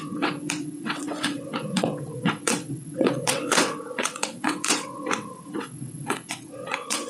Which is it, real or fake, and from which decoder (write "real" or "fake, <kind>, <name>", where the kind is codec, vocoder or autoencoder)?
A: fake, vocoder, WaveNeXt